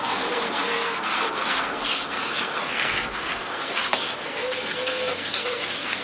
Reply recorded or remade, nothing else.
remade